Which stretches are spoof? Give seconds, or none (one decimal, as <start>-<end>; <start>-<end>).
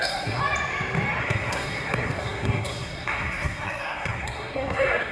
0.0-0.4; 1.2-5.1